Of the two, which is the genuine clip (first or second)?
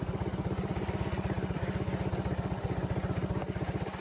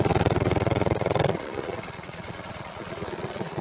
first